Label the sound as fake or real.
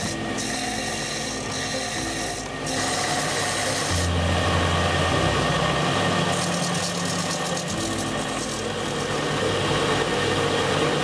real